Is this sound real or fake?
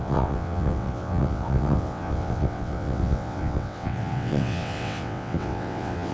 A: fake